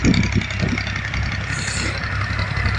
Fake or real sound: real